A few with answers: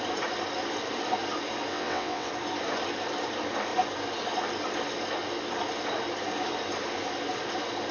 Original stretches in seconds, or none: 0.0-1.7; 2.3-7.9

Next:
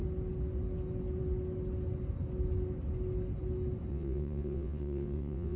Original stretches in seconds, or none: 0.0-3.9

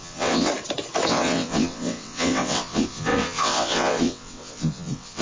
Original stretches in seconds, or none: 0.5-1.1

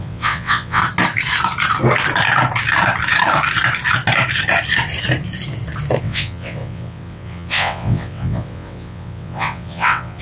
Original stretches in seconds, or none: 0.8-6.0

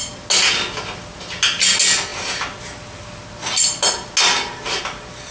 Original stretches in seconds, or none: 0.0-5.3